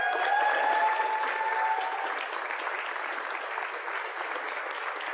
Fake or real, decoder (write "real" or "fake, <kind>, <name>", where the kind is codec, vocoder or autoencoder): real